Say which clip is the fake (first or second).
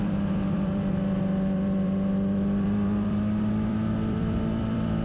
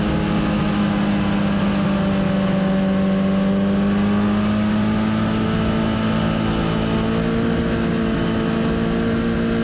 first